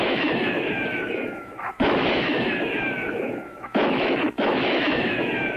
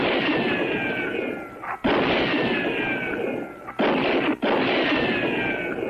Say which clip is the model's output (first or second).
first